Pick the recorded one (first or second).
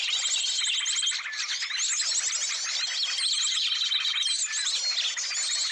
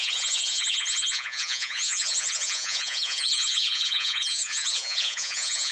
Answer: first